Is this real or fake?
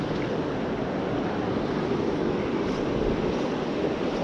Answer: real